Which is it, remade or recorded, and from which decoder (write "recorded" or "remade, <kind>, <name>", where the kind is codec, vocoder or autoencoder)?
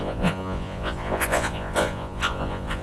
remade, vocoder, Vocos